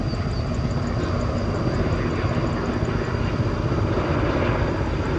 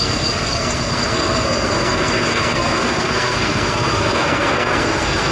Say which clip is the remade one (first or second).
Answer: second